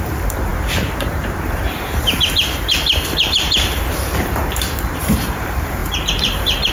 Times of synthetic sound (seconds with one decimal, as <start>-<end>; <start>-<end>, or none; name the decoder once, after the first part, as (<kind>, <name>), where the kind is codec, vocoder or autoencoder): 0.0-6.7 (vocoder, BigVGAN v2)